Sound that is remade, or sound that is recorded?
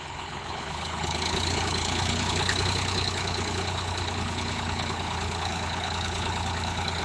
remade